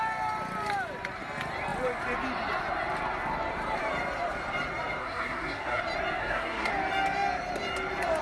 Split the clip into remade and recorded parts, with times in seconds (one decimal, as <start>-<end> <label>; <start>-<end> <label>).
0.0-5.0 recorded; 5.0-5.8 remade; 5.8-6.2 recorded; 6.2-6.7 remade; 6.7-8.2 recorded